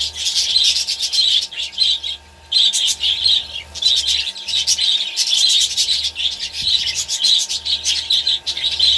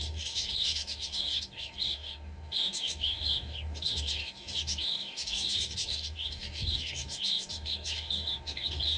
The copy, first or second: second